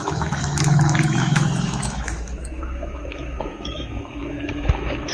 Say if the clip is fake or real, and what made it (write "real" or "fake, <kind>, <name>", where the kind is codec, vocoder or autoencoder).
fake, autoencoder, DAC-VAE